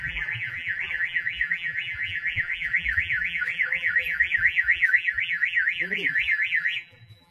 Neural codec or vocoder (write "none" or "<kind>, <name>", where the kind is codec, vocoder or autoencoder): vocoder, BigVGAN v2